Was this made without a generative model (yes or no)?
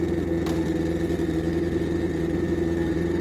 yes